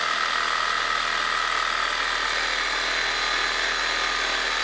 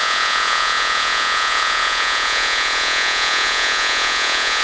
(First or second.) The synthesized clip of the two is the second